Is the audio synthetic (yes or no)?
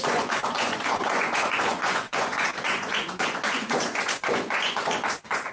yes